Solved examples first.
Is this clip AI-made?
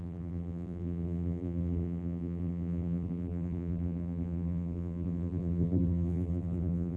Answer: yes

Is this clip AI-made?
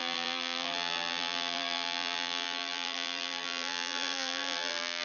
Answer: yes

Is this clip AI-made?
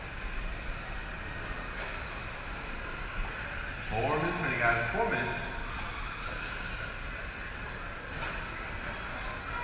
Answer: no